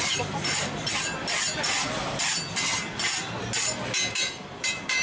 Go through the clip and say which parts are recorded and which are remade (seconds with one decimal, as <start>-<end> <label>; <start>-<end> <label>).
0.0-1.1 remade; 1.1-4.1 recorded; 4.1-5.0 remade